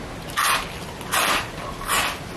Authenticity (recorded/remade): recorded